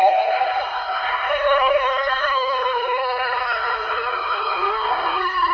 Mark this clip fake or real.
fake